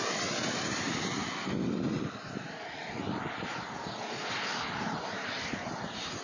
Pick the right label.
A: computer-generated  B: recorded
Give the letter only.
B